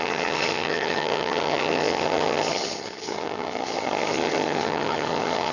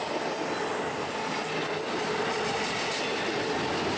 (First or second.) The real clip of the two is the second